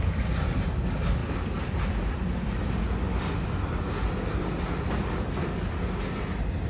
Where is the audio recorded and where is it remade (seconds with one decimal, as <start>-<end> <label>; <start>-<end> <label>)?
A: 0.0-6.7 recorded